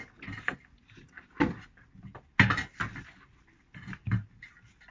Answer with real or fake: real